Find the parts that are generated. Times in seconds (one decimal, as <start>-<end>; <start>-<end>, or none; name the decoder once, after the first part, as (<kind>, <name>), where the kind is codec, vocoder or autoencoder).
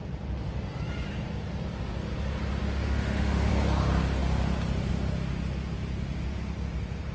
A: 2.6-3.5 (autoencoder, DAC-VAE)